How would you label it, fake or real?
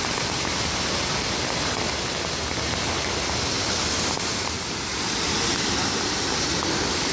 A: real